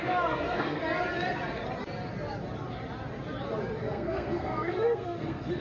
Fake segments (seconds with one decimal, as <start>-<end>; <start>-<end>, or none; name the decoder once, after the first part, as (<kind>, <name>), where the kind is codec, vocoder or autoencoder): 0.0-0.8 (codec, SNAC); 3.8-5.6

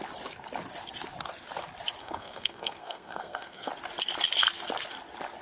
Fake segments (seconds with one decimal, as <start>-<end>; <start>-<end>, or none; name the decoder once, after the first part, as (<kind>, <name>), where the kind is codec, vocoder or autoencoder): 2.0-3.7 (codec, SNAC)

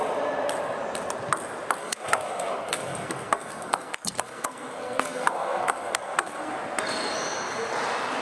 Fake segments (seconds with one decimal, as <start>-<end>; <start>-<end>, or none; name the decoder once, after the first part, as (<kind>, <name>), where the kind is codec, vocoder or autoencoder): 1.8-6.5 (codec, SNAC)

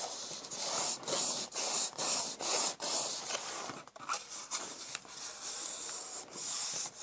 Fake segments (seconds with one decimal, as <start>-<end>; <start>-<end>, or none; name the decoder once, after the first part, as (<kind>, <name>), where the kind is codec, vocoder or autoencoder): none

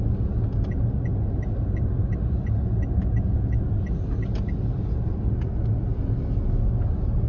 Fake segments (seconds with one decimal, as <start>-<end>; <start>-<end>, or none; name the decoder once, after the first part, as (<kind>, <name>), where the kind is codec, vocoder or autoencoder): none

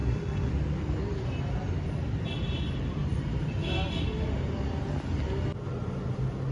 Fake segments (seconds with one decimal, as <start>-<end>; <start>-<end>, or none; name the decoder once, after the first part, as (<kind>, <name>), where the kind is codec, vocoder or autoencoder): 0.0-0.5 (codec, SNAC)

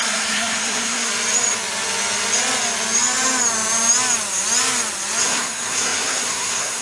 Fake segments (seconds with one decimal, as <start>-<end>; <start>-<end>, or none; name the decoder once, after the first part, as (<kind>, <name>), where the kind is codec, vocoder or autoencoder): 0.0-1.1 (codec, SNAC); 5.2-6.8